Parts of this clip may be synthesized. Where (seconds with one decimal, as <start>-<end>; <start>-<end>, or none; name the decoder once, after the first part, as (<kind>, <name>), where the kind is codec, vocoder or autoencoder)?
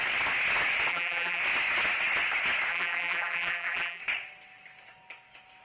0.9-1.4 (vocoder, BigVGAN v2); 2.7-4.0